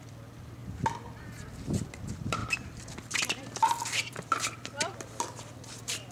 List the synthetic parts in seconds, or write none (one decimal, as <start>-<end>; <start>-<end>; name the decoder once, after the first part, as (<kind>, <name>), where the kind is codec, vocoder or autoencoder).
0.0-0.6 (vocoder, BigVGAN v2); 2.0-6.1